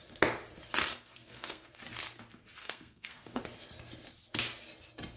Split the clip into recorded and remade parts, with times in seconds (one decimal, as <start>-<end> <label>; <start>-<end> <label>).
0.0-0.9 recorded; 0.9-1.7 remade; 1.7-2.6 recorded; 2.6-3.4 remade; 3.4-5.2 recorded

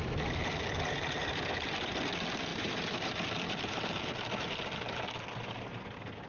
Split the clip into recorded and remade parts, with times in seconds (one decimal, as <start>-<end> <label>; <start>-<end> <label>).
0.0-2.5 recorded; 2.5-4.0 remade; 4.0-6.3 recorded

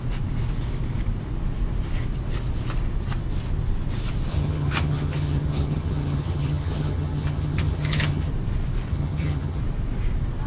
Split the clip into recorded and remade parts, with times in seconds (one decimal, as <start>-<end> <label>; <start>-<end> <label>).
0.0-4.3 recorded; 4.3-8.3 remade; 8.3-8.9 recorded; 8.9-9.6 remade; 9.6-10.5 recorded

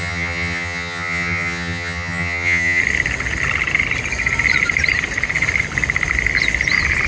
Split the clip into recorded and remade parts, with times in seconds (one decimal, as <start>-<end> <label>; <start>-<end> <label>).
0.0-2.8 remade; 2.8-7.1 recorded